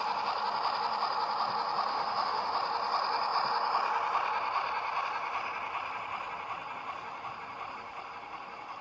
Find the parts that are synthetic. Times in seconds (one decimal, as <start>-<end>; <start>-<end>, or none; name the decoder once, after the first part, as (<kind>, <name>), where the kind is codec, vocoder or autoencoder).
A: 1.9-2.5 (autoencoder, DAC-VAE)